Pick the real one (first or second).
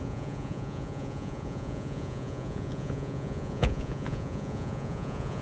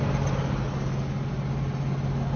second